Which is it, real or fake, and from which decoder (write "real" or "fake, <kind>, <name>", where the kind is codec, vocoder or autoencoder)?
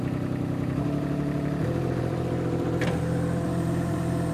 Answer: fake, vocoder, BigVGAN v2